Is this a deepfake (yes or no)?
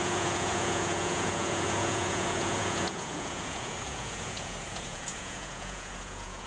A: yes